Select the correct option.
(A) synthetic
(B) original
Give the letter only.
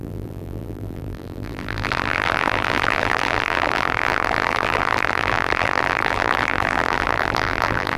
A